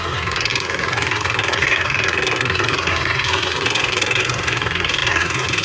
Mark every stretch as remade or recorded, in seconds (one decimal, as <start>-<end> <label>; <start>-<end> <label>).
0.0-5.6 remade